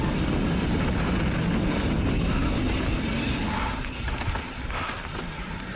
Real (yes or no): yes